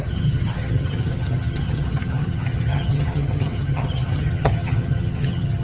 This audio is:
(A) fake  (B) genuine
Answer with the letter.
A